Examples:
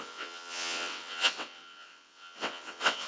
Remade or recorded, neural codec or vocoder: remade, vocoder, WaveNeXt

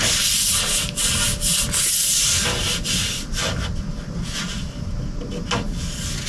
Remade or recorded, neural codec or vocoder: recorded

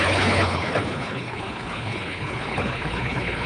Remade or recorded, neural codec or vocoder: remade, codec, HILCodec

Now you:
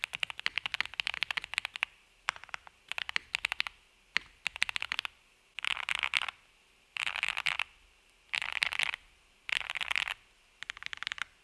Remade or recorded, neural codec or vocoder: recorded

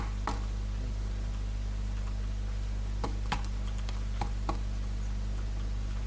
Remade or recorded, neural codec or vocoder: recorded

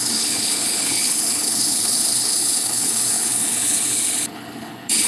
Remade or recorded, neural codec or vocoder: remade, codec, HILCodec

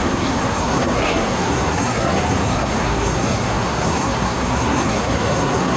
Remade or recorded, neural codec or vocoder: remade, codec, SNAC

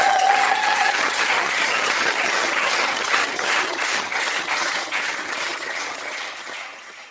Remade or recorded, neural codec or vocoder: remade, vocoder, HiFi-GAN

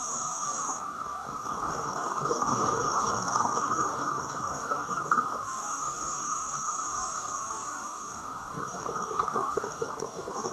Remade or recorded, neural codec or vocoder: remade, codec, DAC